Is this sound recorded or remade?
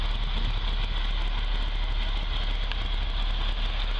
recorded